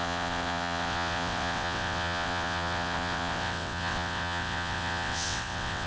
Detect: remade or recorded remade